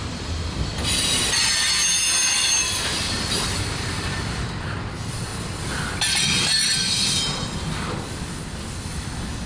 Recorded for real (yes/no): yes